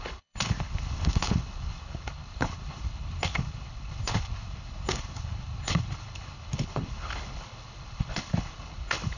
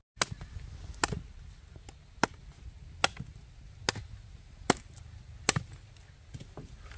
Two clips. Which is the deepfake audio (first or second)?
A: first